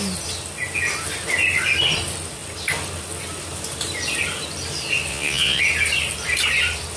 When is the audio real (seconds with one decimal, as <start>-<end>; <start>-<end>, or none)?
0.0-5.1; 5.6-7.0